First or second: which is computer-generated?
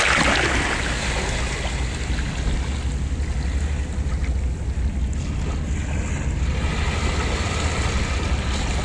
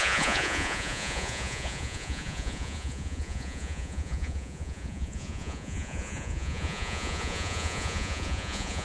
second